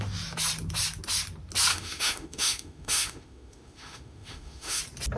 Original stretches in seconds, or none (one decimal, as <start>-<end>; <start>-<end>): 0.0-1.7; 4.8-5.2